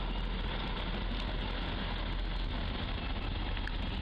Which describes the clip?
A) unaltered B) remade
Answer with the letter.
A